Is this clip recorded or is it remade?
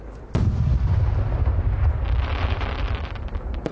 recorded